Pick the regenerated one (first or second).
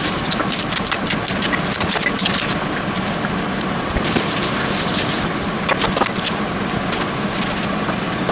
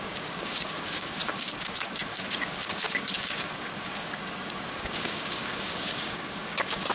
second